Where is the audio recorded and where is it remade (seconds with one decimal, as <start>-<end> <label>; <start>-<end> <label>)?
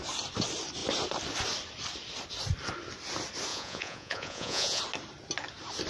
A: 0.0-3.5 recorded; 3.5-4.8 remade; 4.8-5.9 recorded